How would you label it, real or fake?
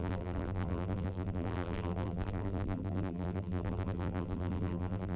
fake